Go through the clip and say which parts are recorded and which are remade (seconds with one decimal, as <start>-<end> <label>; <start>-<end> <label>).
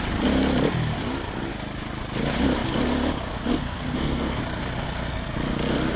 0.0-3.5 recorded; 3.5-4.4 remade; 4.4-6.0 recorded